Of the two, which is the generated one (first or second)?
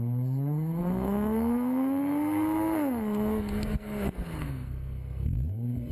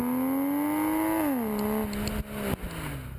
first